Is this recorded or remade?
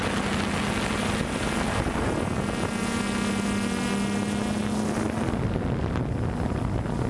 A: recorded